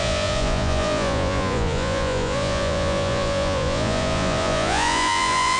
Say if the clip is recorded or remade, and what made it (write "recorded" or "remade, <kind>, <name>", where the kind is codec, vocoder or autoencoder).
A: remade, vocoder, Vocos